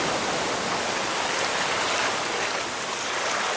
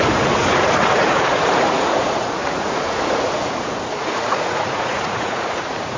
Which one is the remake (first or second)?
second